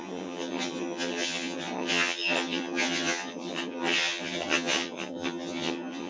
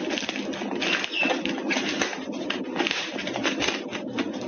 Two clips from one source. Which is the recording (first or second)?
second